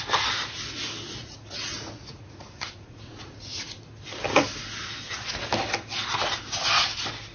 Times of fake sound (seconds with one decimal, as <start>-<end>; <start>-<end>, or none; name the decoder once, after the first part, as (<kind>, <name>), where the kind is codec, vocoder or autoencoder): 1.2-3.6 (vocoder, Vocos)